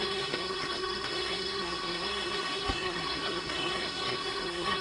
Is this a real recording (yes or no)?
no